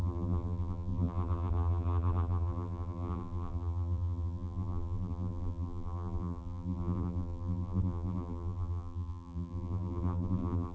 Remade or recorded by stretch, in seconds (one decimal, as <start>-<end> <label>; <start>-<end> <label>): 0.0-10.7 remade